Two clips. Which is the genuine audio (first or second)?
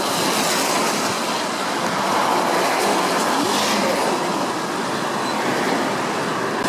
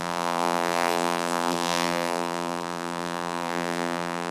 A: first